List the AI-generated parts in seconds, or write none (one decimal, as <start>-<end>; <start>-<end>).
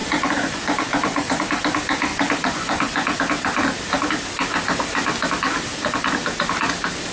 0.0-1.6; 2.1-3.2